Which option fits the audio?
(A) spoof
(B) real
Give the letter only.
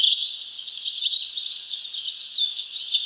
B